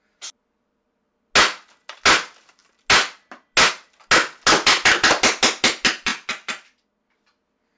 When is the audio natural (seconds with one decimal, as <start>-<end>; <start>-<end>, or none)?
0.0-7.8